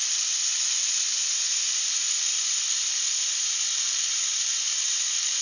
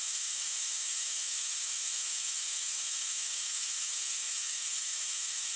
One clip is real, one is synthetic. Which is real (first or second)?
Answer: first